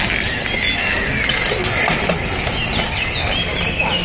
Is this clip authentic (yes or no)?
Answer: yes